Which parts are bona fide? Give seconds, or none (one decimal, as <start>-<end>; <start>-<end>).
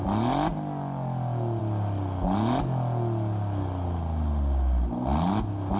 0.0-5.8